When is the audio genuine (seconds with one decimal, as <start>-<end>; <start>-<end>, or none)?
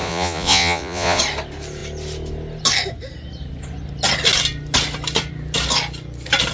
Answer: 1.2-6.5